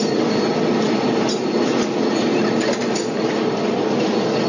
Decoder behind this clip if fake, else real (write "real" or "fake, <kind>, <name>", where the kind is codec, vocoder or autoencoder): real